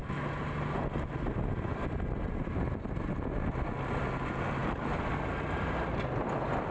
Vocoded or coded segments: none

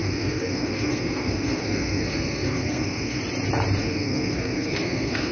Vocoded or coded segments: 0.0-3.2 (codec, SNAC); 3.8-5.3

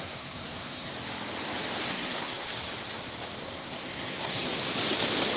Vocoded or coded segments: 0.0-0.9 (codec, SNAC); 1.9-2.4; 3.4-4.6